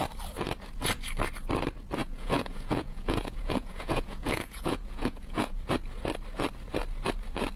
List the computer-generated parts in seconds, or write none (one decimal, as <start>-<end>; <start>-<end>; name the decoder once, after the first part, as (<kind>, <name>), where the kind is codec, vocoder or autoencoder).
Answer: 2.0-5.5 (vocoder, Vocos)